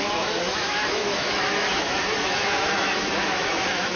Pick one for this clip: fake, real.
fake